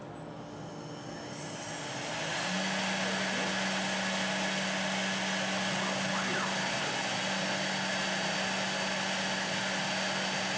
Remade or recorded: recorded